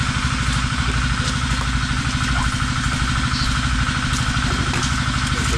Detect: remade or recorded recorded